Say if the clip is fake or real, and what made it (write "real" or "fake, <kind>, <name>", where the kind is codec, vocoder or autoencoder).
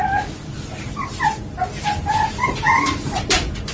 real